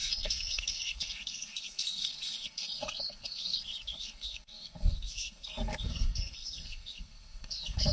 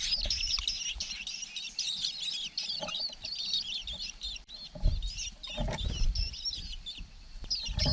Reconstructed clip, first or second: first